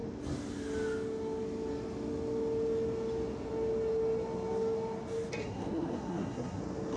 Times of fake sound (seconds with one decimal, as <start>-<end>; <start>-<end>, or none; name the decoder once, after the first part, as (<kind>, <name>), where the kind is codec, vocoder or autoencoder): 5.4-6.6 (codec, SNAC)

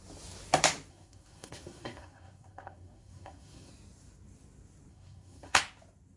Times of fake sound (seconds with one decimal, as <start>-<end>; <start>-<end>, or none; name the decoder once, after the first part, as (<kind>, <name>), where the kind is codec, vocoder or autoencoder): 0.9-3.7 (codec, SNAC); 4.9-5.6